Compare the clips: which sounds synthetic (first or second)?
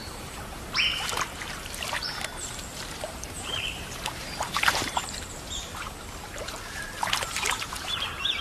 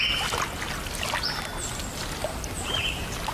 first